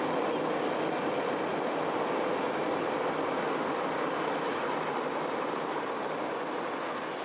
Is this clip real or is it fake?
real